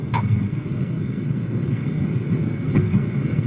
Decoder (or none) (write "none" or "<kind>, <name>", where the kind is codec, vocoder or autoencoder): codec, SNAC